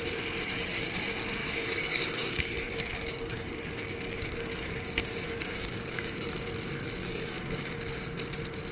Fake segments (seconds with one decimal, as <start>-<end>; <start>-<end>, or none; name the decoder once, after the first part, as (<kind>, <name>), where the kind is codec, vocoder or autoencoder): 1.4-6.3 (codec, DAC); 7.0-7.8